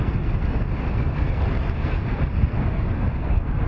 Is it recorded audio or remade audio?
remade